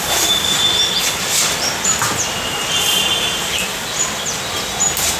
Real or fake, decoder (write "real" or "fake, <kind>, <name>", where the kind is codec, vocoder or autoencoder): real